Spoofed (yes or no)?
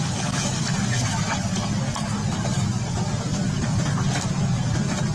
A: no